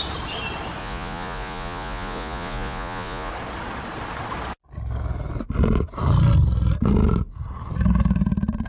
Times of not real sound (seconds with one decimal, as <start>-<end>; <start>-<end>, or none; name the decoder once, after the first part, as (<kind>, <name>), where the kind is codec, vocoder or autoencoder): 0.8-3.3 (vocoder, Vocos)

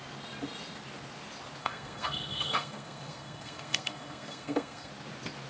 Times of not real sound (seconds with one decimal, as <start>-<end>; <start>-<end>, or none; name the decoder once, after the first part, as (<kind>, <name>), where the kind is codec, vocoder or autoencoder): 1.6-4.9 (codec, SNAC)